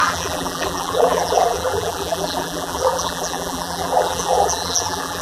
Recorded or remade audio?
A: remade